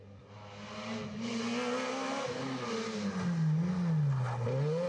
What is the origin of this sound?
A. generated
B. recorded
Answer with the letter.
B